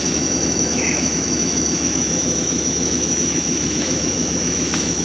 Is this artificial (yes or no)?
yes